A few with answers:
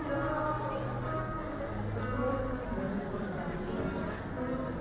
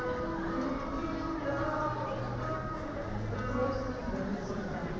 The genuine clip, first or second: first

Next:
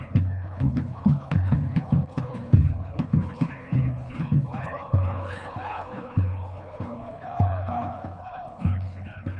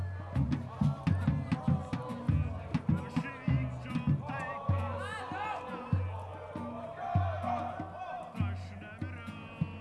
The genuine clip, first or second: second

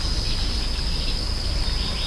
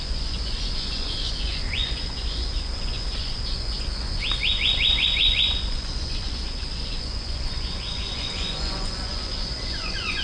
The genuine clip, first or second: first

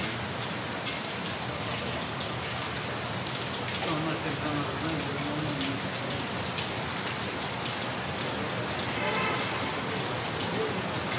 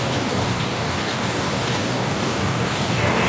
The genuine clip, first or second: first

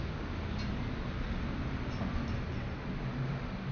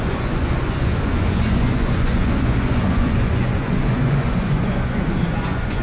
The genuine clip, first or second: first